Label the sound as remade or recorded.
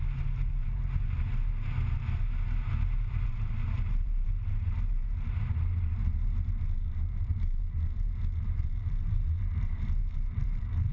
remade